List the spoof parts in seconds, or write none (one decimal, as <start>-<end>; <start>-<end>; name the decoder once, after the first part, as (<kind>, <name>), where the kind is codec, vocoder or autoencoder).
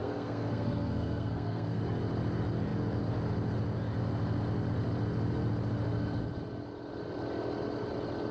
0.0-1.8 (codec, SNAC)